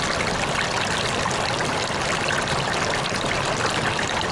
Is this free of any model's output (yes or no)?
yes